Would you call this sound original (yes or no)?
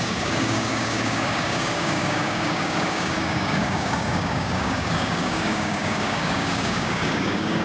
no